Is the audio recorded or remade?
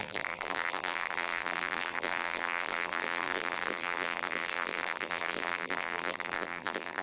remade